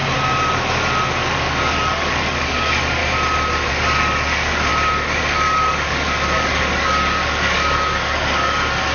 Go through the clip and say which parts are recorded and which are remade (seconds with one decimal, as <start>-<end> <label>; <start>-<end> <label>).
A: 0.0-1.1 recorded; 1.1-3.0 remade; 3.0-3.7 recorded; 3.7-4.7 remade; 4.7-5.2 recorded; 5.2-8.9 remade